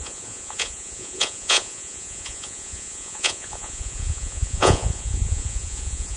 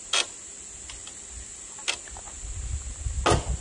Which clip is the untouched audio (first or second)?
second